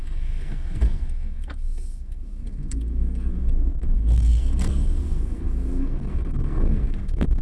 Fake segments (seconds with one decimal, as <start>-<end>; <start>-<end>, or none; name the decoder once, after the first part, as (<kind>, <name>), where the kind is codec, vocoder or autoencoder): 0.0-7.4 (codec, SNAC)